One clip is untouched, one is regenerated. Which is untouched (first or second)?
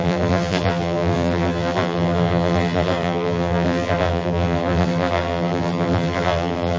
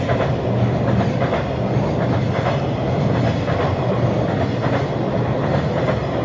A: second